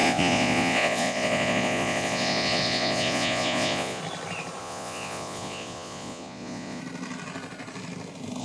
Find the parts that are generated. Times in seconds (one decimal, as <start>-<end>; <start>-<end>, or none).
0.0-4.0; 4.6-6.8